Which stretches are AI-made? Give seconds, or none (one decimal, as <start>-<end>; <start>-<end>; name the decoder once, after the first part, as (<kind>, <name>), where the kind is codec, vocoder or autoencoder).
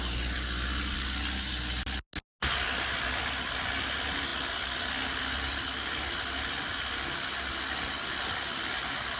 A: none